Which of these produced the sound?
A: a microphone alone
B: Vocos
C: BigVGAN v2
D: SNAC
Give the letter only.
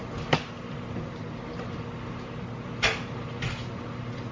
A